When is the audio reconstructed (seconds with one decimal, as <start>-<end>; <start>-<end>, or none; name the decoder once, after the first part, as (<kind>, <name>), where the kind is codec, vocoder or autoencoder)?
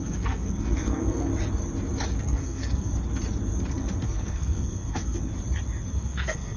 0.0-1.3 (codec, SNAC); 2.2-2.9; 3.7-5.3; 5.9-6.6